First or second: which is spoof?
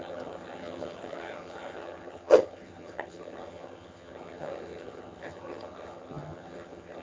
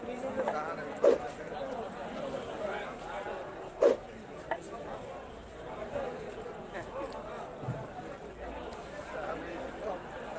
first